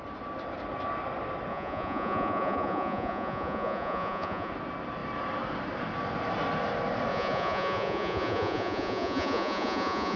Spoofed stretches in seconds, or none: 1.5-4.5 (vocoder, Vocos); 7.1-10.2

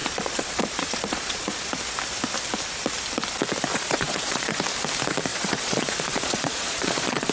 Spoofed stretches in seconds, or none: 0.0-1.7 (vocoder, Vocos); 3.7-4.6; 5.3-7.3

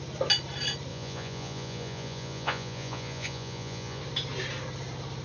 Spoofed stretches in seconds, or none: 0.9-4.0 (vocoder, Vocos)

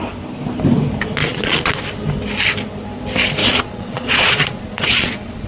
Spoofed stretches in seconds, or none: 1.2-1.8 (vocoder, Vocos); 3.4-5.5

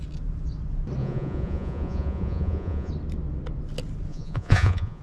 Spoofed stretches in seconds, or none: 1.0-2.9 (vocoder, Vocos); 4.1-5.0

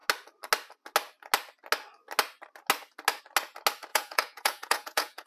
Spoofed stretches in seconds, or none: 3.9-5.3 (vocoder, Vocos)

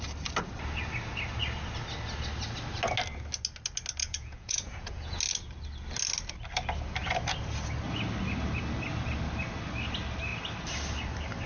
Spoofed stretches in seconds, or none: 4.0-5.2 (vocoder, Vocos)